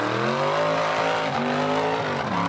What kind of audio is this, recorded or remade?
recorded